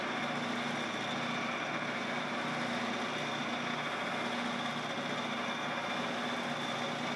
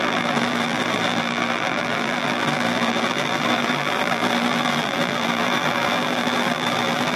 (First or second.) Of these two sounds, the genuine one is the first